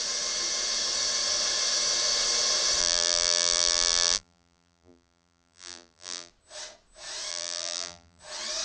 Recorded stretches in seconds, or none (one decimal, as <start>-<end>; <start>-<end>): 0.0-2.8; 6.3-7.3; 8.2-8.6